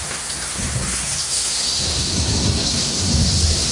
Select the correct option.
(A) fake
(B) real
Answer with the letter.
A